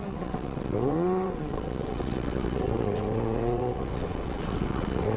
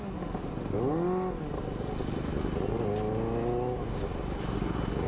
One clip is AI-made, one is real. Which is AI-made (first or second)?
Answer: first